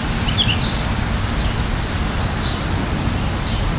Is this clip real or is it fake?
real